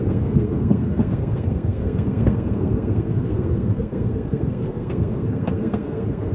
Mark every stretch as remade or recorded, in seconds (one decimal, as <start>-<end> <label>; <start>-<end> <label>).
0.0-6.3 remade